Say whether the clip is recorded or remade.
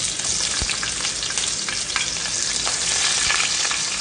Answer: recorded